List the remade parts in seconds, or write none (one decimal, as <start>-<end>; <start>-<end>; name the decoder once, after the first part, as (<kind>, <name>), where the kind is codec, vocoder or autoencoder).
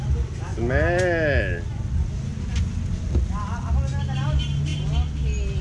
none